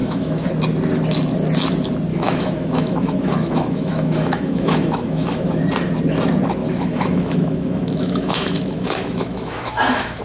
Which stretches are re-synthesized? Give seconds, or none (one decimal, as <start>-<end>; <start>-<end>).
0.0-0.5; 2.1-5.6; 6.6-10.2